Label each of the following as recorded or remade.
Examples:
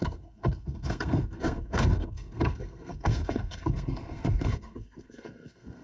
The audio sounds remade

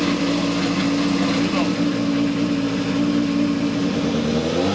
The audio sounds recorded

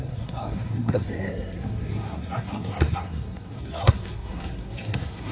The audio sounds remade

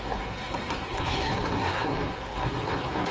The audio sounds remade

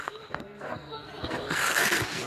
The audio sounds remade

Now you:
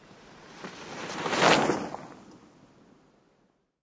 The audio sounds recorded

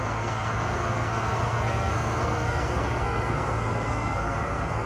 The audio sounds remade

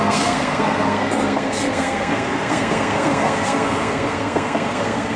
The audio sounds remade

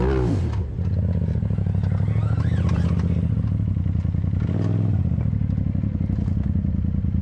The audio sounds recorded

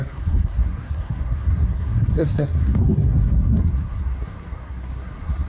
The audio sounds remade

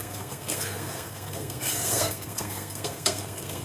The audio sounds remade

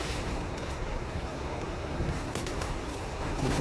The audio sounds remade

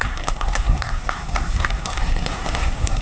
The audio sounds remade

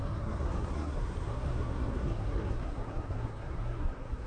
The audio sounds remade